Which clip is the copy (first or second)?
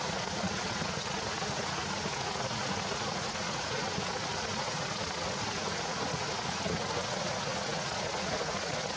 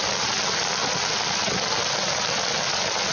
first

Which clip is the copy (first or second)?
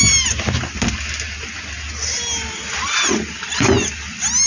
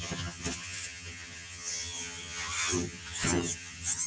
second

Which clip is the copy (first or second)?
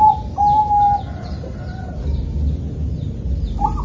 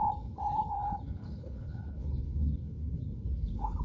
second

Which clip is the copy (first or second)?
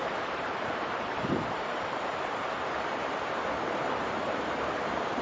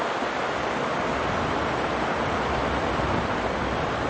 first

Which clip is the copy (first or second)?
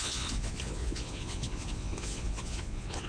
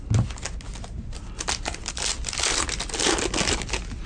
first